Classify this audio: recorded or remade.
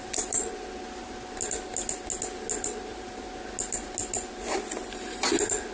recorded